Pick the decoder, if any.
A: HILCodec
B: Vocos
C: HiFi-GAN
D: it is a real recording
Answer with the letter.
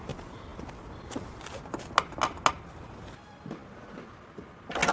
D